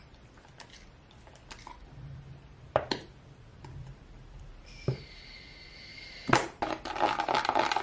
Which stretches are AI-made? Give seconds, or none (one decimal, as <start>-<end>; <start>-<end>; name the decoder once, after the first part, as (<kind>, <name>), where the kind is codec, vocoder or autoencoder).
2.5-3.1 (vocoder, BigVGAN v2); 3.5-5.2; 5.9-6.7